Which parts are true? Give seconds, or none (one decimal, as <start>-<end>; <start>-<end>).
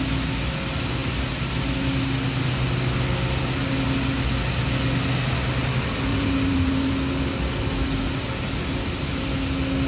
0.0-6.1; 6.9-9.9